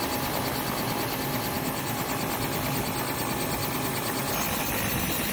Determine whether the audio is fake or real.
real